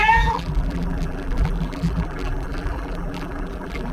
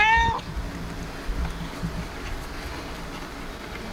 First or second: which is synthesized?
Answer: first